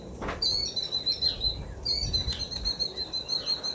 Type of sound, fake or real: real